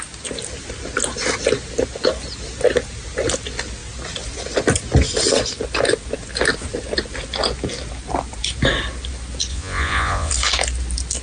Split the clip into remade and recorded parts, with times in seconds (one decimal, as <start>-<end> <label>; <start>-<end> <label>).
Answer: 0.0-9.5 recorded; 9.5-10.3 remade; 10.3-11.2 recorded